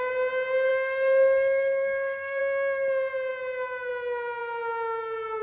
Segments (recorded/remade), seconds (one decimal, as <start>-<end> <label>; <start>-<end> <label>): 0.0-0.7 recorded; 0.7-2.4 remade; 2.4-5.4 recorded